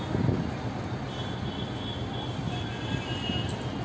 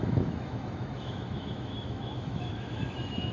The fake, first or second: second